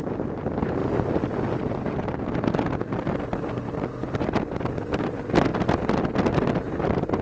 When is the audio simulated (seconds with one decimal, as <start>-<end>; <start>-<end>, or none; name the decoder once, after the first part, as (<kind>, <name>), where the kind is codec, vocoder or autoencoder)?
none